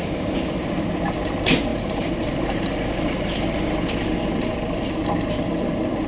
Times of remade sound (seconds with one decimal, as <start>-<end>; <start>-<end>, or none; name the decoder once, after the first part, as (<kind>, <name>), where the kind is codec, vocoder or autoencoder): 1.7-3.6 (vocoder, BigVGAN v2)